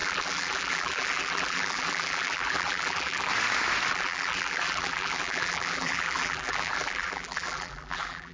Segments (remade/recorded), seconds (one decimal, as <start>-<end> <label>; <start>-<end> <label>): 0.0-3.3 remade; 3.3-3.9 recorded; 3.9-8.3 remade